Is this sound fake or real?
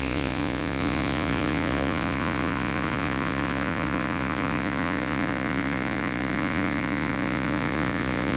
fake